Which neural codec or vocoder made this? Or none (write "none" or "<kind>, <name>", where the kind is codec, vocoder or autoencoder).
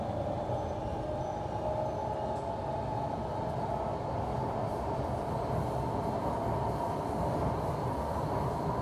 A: none